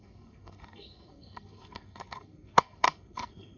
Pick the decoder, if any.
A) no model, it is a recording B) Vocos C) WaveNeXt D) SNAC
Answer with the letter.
D